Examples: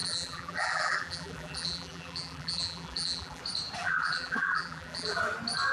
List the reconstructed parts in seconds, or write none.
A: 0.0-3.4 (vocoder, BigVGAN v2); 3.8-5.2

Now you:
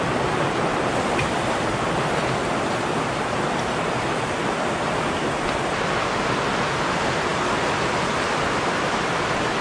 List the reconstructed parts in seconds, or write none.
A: none

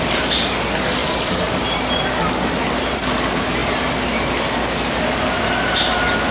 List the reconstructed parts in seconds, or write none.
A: 1.0-1.8 (vocoder, BigVGAN v2)

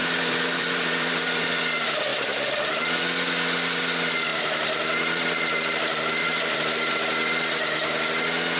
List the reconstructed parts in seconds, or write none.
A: 0.0-1.5 (vocoder, BigVGAN v2); 2.1-2.7; 4.3-6.9